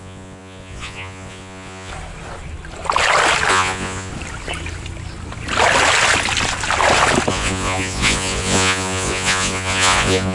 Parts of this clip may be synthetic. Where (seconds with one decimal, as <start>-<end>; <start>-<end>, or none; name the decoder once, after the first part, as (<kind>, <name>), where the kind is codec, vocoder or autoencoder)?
0.0-1.9 (vocoder, Vocos); 3.5-4.1; 7.3-10.3